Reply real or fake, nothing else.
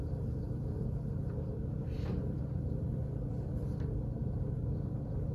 fake